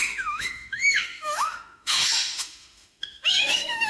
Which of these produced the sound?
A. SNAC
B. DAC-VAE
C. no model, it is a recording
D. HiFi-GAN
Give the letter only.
B